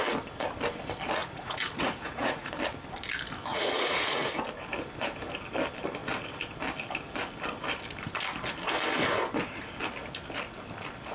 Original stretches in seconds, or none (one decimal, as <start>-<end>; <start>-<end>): 0.0-1.2; 2.5-3.5; 4.3-11.1

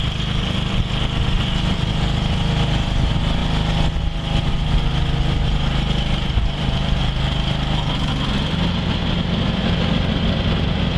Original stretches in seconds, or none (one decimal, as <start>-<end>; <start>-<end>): 3.4-6.4; 7.0-8.8

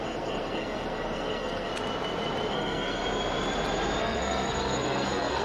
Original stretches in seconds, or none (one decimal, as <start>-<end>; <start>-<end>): 1.7-2.5; 3.0-4.0

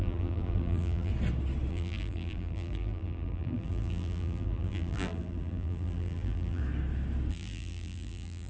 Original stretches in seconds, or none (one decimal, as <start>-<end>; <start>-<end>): 1.1-1.7; 6.6-7.3

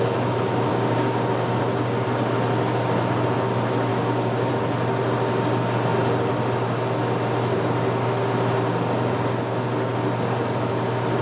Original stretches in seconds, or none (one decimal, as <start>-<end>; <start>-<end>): 0.0-0.7; 1.6-3.9; 4.5-11.2

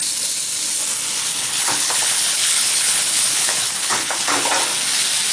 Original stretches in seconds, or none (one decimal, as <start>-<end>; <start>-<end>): 0.0-1.3; 4.5-5.3

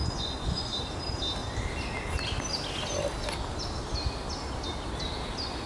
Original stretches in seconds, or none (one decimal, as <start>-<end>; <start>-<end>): 0.8-5.7

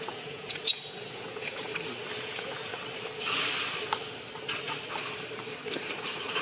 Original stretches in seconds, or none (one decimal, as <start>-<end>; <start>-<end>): 1.7-2.2; 2.7-6.4